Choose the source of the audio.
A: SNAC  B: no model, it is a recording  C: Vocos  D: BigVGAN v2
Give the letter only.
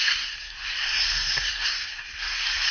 A